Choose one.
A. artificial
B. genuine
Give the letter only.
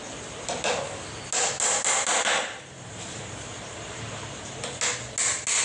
B